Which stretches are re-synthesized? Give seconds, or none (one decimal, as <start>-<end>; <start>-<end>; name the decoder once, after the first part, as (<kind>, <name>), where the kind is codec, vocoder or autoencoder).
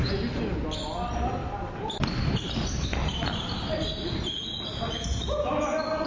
1.4-2.9 (vocoder, BigVGAN v2)